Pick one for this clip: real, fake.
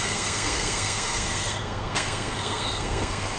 fake